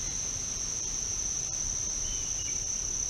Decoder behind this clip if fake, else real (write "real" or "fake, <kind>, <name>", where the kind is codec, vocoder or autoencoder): real